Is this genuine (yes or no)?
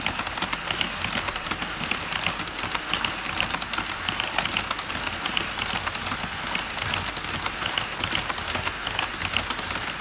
yes